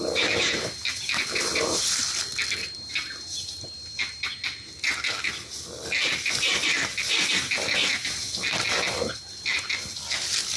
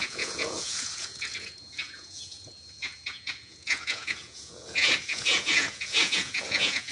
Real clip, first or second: first